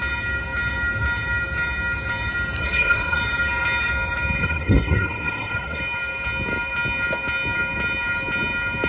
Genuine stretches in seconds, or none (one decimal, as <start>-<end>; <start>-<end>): 0.0-2.6; 3.2-4.4; 5.8-8.9